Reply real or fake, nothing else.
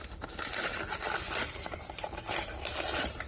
real